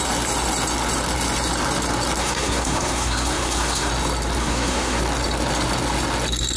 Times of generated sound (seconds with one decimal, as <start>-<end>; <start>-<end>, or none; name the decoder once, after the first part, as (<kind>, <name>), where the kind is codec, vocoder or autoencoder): 2.2-3.9 (codec, SNAC); 4.4-5.0